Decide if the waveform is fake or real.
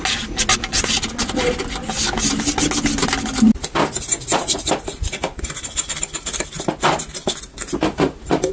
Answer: real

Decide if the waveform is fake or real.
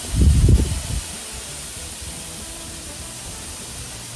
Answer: real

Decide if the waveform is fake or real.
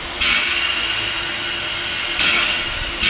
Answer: real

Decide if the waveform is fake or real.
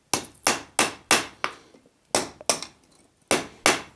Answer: real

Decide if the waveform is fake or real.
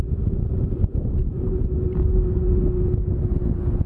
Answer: real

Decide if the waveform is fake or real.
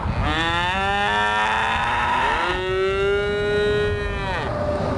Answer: real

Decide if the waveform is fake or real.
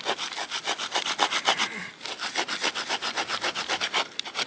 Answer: real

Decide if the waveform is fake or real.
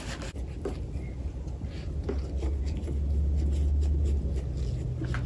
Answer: real